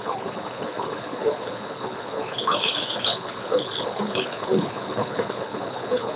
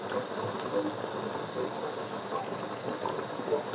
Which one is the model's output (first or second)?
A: first